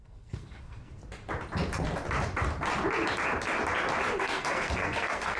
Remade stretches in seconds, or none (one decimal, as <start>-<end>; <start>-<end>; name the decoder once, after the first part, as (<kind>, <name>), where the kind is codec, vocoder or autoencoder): 0.0-1.0 (codec, SNAC); 4.2-5.4